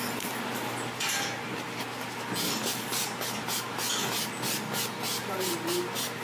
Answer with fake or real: real